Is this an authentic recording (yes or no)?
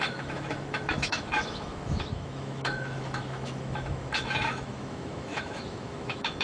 no